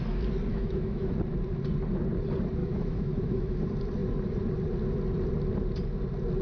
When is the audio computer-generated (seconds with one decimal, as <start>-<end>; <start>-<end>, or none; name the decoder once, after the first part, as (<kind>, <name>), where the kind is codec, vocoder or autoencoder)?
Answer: 0.5-1.1 (autoencoder, DAC-VAE); 2.6-3.6